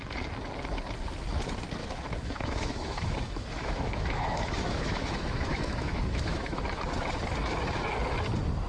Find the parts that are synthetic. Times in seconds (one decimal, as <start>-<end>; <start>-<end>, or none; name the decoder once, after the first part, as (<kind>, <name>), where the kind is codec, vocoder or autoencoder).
1.8-6.9 (autoencoder, DAC-VAE)